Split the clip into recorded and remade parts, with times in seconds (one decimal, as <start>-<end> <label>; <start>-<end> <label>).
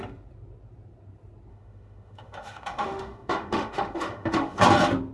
0.0-1.5 recorded; 1.5-4.6 remade; 4.6-5.1 recorded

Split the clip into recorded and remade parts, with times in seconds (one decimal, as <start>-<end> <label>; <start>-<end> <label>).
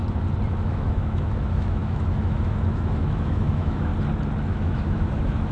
0.0-0.5 recorded; 0.5-3.9 remade; 3.9-4.5 recorded; 4.5-5.5 remade